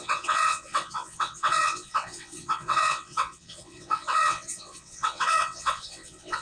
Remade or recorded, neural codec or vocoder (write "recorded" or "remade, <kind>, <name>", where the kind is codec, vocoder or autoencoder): remade, vocoder, WaveNeXt